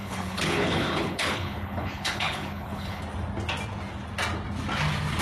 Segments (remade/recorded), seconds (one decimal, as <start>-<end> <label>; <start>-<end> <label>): 0.0-3.0 remade; 3.0-5.2 recorded

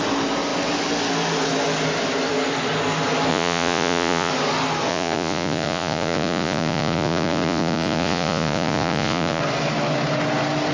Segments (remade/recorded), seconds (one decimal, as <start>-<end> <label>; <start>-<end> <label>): 0.0-3.3 recorded; 3.3-4.3 remade; 4.3-4.9 recorded; 4.9-9.4 remade; 9.4-10.7 recorded

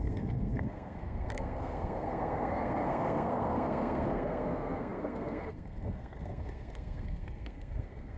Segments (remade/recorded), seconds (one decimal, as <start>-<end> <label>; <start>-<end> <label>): 0.0-8.2 remade

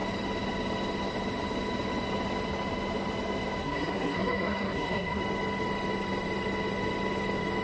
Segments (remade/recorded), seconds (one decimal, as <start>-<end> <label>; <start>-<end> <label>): 0.0-3.6 recorded; 3.6-5.2 remade; 5.2-7.6 recorded

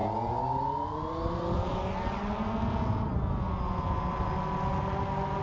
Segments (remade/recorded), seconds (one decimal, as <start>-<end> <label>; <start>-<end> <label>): 0.0-5.4 recorded

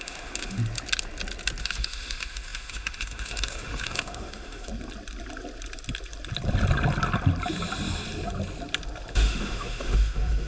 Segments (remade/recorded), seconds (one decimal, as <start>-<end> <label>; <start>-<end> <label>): 0.0-0.6 remade; 0.6-1.6 recorded; 1.6-4.7 remade; 4.7-9.1 recorded; 9.1-10.5 remade

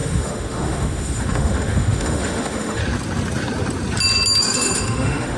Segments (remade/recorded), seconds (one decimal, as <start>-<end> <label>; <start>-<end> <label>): 0.0-2.8 remade; 2.8-4.4 recorded; 4.4-5.4 remade